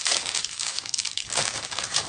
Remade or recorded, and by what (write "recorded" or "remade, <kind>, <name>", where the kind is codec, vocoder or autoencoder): remade, codec, DAC